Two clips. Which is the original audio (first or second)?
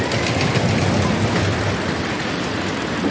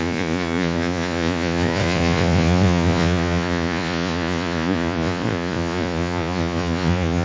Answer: first